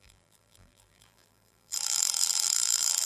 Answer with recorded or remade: remade